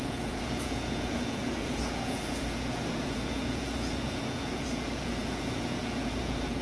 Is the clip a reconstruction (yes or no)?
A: yes